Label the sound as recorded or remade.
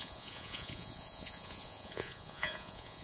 remade